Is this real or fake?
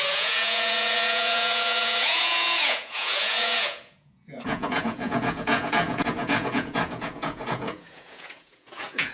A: fake